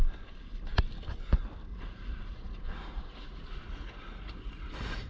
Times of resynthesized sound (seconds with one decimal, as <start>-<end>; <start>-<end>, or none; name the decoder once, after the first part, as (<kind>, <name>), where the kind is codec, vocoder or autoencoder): 1.7-5.1 (vocoder, Vocos)